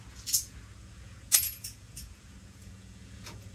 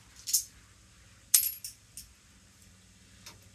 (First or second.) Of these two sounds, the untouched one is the second